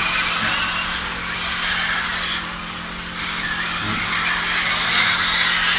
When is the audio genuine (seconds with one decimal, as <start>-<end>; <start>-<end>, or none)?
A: 0.0-1.7; 2.1-5.8

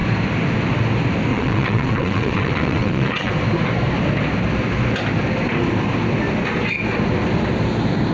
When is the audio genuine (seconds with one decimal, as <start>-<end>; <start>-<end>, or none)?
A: 0.0-1.3; 3.3-8.1

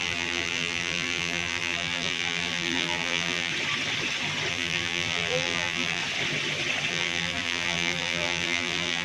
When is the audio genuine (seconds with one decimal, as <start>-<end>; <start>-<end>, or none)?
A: 3.5-4.5; 6.0-6.9

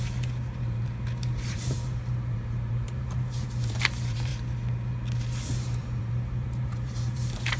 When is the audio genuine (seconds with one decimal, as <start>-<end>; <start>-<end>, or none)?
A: 4.3-5.5